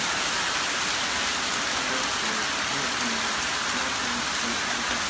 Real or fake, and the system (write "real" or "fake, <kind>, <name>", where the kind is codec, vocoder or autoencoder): real